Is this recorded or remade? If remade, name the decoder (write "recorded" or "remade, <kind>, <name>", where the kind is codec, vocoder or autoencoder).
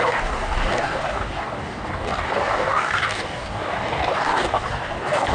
remade, codec, DAC